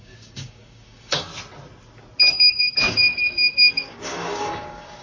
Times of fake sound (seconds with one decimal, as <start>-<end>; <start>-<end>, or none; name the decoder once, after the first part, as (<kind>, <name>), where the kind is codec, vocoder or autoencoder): 0.0-1.3 (codec, DAC); 2.6-5.0